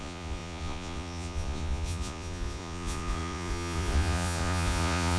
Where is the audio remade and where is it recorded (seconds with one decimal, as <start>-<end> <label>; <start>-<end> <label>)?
0.0-5.2 remade